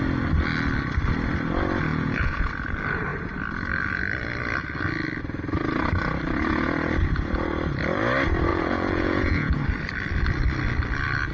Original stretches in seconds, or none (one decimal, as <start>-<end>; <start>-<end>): 0.0-1.9; 2.5-8.5; 9.6-11.3